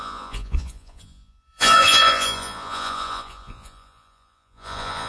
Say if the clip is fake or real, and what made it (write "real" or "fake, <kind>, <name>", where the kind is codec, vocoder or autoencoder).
fake, vocoder, Vocos